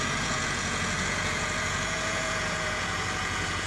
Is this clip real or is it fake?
fake